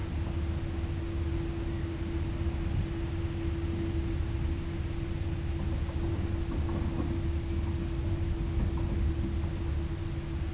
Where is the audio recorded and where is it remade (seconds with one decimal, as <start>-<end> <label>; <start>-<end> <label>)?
0.0-10.5 recorded